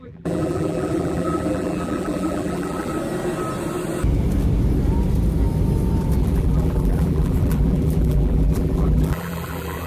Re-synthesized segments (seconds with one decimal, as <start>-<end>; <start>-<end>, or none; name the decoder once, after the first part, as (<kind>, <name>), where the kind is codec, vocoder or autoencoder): 0.0-2.9 (vocoder, BigVGAN v2); 6.2-9.9